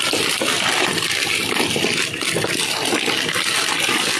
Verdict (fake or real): real